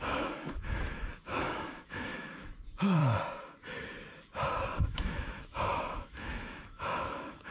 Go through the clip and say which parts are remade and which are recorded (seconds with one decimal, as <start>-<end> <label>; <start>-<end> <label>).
0.0-3.0 remade; 3.0-4.8 recorded; 4.8-7.5 remade